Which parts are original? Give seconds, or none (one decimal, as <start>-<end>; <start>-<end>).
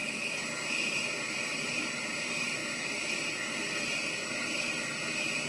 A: 0.0-5.5